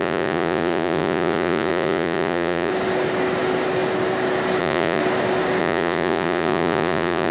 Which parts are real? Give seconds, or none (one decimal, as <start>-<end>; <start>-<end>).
2.7-4.6; 5.0-5.6